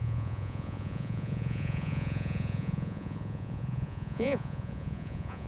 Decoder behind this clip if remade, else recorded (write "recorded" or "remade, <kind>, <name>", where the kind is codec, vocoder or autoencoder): remade, vocoder, Vocos